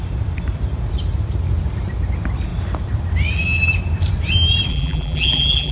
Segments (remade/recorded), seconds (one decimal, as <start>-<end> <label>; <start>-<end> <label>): 0.0-4.7 recorded; 4.7-5.7 remade